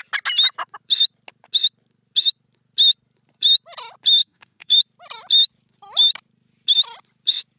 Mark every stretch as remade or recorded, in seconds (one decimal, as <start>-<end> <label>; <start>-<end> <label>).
0.0-4.2 recorded; 4.2-4.8 remade; 4.8-7.6 recorded